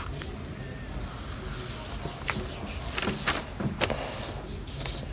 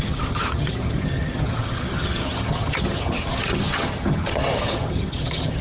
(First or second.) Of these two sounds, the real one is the first